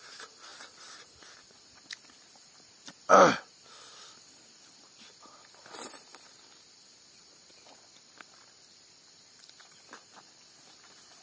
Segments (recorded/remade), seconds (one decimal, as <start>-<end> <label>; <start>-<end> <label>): 0.0-11.2 recorded